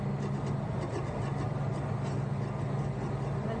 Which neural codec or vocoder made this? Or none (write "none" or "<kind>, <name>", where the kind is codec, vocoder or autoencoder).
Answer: none